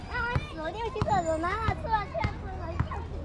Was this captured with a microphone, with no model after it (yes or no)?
yes